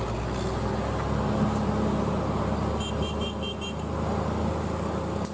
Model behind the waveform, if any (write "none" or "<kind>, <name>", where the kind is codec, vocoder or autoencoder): none